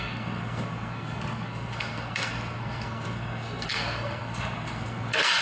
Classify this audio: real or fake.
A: fake